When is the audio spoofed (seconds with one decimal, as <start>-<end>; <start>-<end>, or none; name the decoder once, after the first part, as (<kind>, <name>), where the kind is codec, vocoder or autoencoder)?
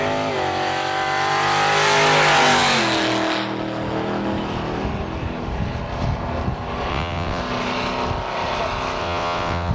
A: 6.9-7.4 (vocoder, WaveNeXt); 9.0-9.7